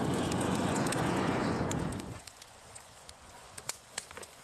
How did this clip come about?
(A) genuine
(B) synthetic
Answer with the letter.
B